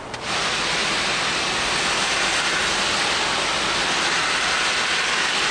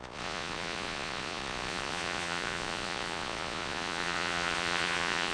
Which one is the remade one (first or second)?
second